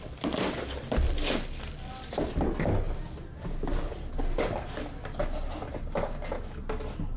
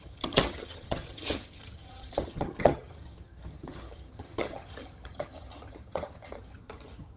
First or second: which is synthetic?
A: second